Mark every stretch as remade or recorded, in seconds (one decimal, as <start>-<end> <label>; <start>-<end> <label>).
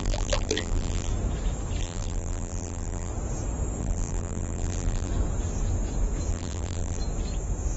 0.0-1.1 remade; 1.1-1.8 recorded; 1.8-3.1 remade; 3.1-3.8 recorded; 3.8-5.1 remade; 5.1-6.3 recorded; 6.3-7.0 remade; 7.0-7.8 recorded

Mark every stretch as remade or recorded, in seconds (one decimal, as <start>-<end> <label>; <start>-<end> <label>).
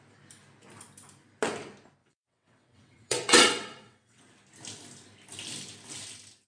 0.0-2.0 recorded; 2.0-4.2 remade; 4.2-6.5 recorded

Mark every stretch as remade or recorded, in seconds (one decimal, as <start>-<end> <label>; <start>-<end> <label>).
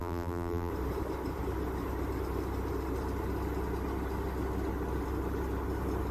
0.0-0.7 remade; 0.7-6.1 recorded